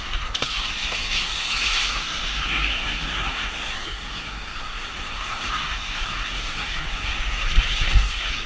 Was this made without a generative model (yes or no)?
no